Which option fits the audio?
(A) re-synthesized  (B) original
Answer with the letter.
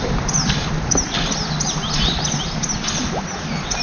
B